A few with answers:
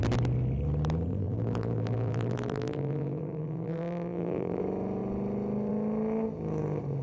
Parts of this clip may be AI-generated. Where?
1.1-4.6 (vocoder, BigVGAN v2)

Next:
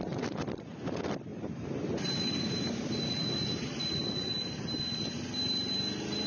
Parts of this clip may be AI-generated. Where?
1.3-4.8 (vocoder, BigVGAN v2)

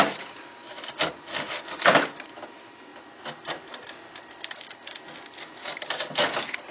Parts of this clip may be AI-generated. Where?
0.0-2.9 (vocoder, BigVGAN v2); 5.8-6.7